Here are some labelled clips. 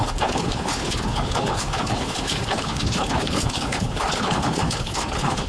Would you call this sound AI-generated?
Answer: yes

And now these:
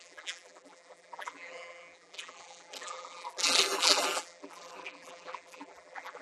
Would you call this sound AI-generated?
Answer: yes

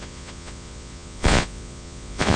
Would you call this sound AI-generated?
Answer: yes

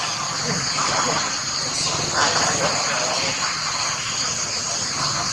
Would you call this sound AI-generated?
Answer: no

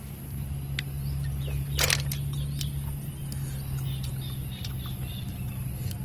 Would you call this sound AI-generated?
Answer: no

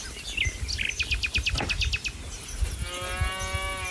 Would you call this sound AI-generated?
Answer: no